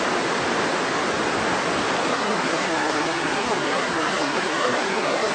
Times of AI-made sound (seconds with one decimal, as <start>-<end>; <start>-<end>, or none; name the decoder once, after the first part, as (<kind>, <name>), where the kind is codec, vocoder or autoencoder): 2.1-5.3 (codec, SNAC)